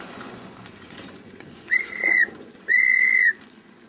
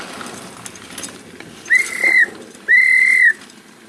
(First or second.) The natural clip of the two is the second